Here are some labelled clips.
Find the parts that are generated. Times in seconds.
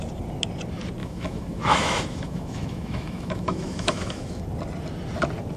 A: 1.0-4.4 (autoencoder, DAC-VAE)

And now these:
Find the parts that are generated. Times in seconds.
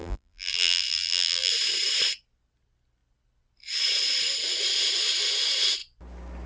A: 0.0-1.5 (vocoder, BigVGAN v2)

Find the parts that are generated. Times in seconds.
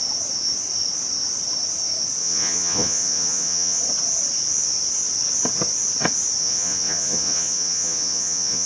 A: 2.2-3.8 (vocoder, Vocos); 6.4-8.7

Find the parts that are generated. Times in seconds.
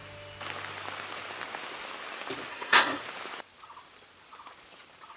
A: 2.5-3.0 (codec, SNAC)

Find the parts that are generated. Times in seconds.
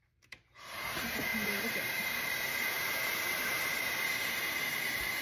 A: 0.0-5.2 (vocoder, BigVGAN v2)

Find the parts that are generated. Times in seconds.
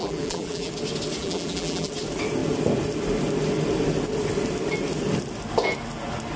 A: 0.0-0.7 (vocoder, BigVGAN v2); 1.2-1.9